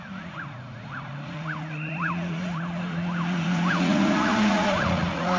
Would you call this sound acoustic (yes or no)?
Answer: no